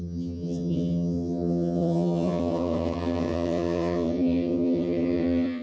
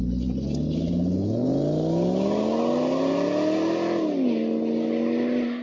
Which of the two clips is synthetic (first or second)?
first